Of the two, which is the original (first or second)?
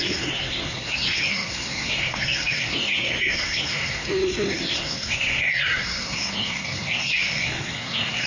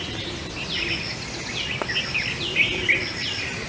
second